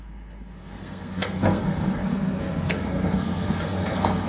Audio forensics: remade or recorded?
remade